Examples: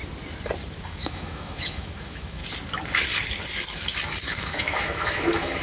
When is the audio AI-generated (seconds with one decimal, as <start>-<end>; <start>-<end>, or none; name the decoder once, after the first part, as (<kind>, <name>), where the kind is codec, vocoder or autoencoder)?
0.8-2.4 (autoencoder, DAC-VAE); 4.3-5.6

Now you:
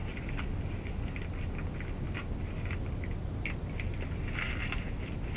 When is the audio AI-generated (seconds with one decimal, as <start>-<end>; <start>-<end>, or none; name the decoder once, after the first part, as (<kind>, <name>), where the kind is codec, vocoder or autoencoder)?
none

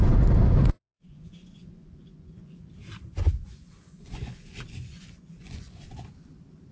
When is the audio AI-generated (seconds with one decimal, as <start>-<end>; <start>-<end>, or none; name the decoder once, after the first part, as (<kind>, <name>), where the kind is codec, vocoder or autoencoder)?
0.6-2.7 (vocoder, Vocos); 3.1-5.8

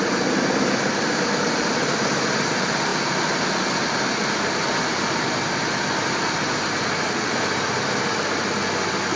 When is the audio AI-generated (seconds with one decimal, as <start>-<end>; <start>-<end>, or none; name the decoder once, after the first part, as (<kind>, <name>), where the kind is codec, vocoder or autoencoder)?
none

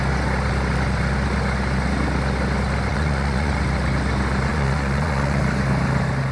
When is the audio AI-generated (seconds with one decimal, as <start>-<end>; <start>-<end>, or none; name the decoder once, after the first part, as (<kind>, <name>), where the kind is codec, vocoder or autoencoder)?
2.9-3.5 (vocoder, Vocos); 4.5-5.4

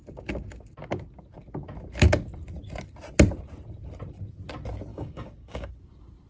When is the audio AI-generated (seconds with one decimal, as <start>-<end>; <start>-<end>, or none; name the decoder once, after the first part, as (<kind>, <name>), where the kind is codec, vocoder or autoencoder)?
4.9-5.7 (codec, DAC)